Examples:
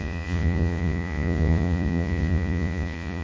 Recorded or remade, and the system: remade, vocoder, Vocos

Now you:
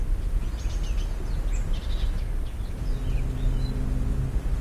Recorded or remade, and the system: recorded